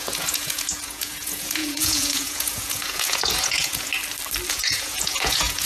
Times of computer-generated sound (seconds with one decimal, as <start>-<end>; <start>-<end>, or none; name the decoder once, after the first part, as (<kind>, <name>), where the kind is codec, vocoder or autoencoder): 0.0-3.9 (vocoder, Vocos); 4.5-5.7